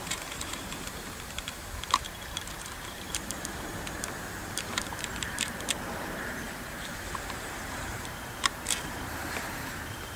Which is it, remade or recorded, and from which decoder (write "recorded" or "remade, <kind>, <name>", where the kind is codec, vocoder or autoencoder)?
remade, vocoder, BigVGAN v2